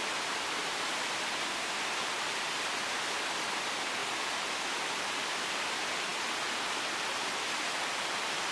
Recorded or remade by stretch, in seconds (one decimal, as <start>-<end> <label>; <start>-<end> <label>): 0.0-0.6 recorded; 0.6-1.2 remade; 1.2-8.5 recorded